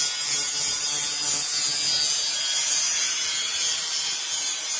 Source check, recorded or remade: recorded